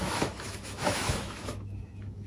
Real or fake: fake